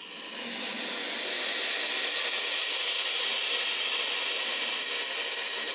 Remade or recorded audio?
recorded